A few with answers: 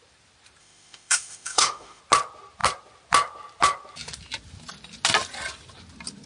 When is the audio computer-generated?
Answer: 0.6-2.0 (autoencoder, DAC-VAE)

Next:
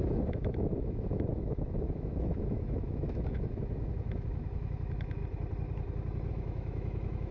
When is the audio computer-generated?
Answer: 0.0-5.2 (autoencoder, DAC-VAE); 6.3-7.3

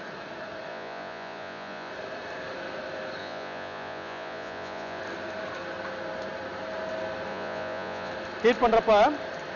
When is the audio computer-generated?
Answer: 0.7-1.9 (vocoder, Vocos); 3.2-5.0; 7.3-8.1

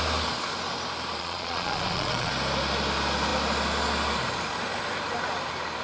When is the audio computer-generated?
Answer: 1.2-2.3 (vocoder, Vocos)

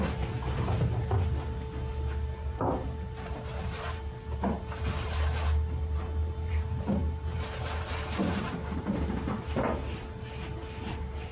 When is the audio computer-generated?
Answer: none